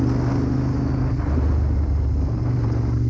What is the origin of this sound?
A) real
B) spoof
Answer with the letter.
A